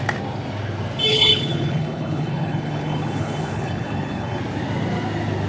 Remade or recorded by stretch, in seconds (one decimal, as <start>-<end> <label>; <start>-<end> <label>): 0.0-1.1 recorded; 1.1-4.4 remade; 4.4-5.5 recorded